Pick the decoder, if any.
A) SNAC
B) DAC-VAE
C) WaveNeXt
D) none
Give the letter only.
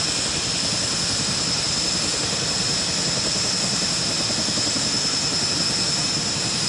D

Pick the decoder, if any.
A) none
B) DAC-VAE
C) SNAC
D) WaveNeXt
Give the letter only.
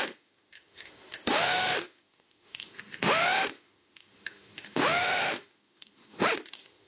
B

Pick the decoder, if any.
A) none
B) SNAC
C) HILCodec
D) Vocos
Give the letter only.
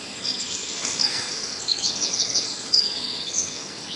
B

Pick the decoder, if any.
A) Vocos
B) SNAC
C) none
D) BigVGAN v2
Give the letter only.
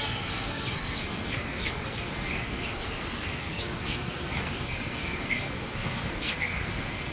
B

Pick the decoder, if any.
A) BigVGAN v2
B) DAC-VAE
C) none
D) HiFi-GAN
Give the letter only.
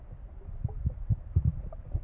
C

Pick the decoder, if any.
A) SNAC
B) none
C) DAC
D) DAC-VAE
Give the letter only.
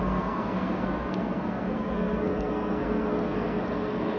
A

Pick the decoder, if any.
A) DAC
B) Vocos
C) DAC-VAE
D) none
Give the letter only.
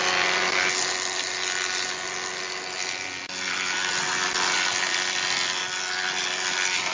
D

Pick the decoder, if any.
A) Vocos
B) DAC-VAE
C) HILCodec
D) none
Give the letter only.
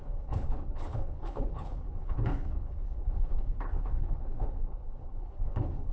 C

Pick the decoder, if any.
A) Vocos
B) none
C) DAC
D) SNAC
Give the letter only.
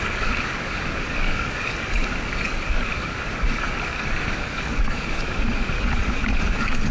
C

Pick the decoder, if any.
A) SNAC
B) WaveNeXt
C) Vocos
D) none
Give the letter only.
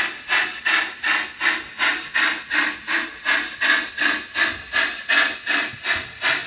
D